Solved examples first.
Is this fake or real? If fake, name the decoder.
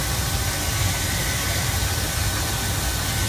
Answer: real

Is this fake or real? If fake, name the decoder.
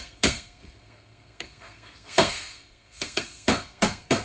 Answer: fake, codec, SNAC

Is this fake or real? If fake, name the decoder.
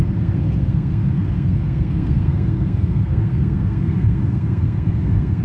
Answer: fake, codec, SNAC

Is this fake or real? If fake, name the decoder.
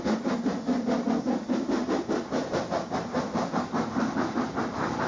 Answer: real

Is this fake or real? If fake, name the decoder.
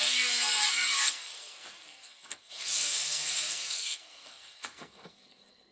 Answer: fake, codec, SNAC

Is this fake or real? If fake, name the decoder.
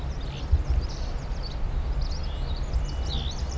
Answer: real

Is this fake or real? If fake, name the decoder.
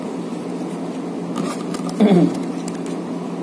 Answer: real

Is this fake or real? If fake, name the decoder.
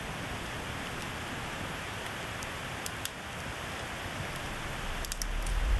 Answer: real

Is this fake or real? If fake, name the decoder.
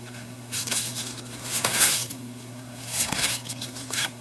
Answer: fake, codec, SNAC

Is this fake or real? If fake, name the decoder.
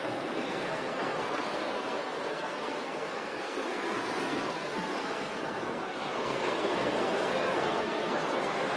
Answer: fake, codec, SNAC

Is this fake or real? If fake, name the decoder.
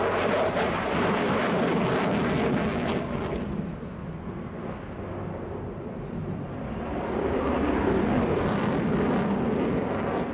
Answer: real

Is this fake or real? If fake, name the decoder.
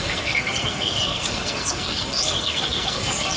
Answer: fake, codec, SNAC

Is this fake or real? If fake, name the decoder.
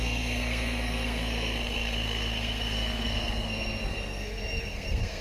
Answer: fake, codec, SNAC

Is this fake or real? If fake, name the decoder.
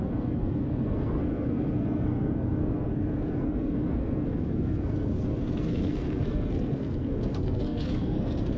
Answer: fake, codec, SNAC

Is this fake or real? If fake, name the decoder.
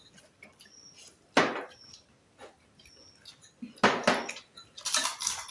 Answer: real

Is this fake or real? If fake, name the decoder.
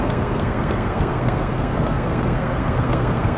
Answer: fake, codec, SNAC